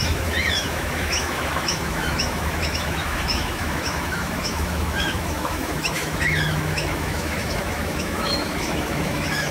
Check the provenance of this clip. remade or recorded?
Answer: remade